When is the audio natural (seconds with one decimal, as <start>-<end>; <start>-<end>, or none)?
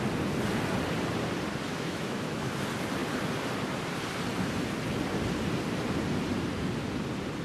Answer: 0.0-1.7; 2.5-7.4